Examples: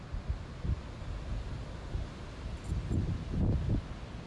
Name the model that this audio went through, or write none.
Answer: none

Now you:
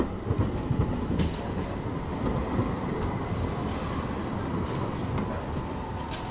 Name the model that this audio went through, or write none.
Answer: none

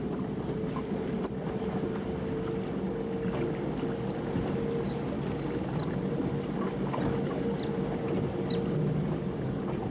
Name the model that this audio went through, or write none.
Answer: none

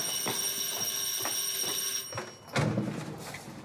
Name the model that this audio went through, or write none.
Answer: none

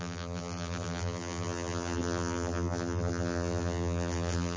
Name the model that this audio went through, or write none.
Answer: vocoder, BigVGAN v2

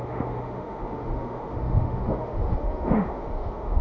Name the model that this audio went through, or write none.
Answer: autoencoder, DAC-VAE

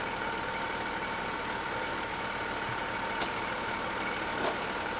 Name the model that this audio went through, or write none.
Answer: none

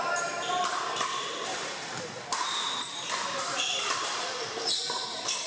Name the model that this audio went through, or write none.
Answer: vocoder, BigVGAN v2